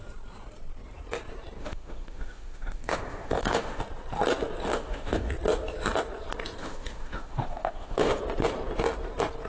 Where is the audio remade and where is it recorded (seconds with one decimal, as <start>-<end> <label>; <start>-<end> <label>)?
0.0-1.6 recorded; 1.6-3.8 remade; 3.8-4.7 recorded; 4.7-5.3 remade; 5.3-6.6 recorded; 6.6-8.2 remade; 8.2-9.5 recorded